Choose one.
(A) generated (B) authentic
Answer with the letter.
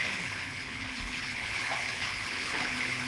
A